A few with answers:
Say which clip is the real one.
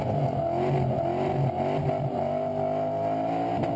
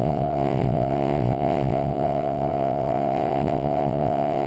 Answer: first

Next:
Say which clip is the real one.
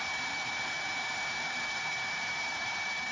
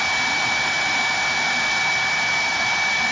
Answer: second